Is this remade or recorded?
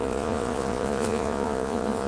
remade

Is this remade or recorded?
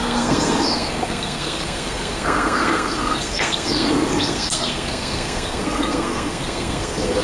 remade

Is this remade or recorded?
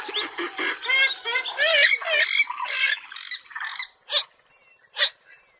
recorded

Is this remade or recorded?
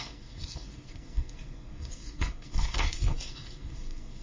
remade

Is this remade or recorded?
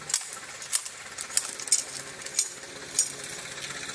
recorded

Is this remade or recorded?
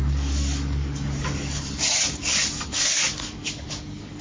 remade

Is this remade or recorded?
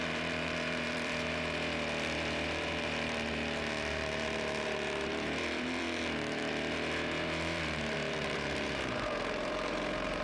remade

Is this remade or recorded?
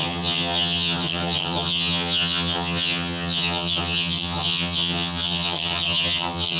remade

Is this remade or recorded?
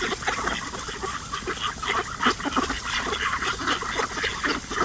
recorded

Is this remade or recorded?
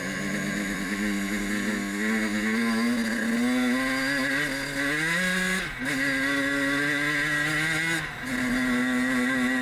recorded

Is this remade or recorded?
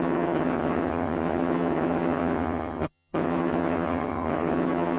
remade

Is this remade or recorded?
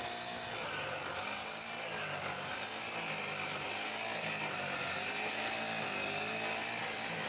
recorded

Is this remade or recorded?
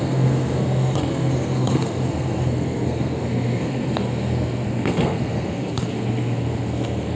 remade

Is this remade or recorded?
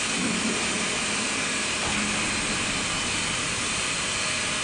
recorded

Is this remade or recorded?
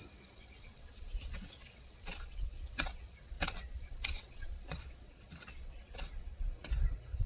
remade